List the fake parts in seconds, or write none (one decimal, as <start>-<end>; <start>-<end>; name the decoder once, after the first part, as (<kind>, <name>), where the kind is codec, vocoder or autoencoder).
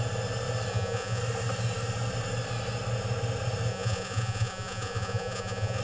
0.7-1.2 (vocoder, Vocos); 3.7-5.8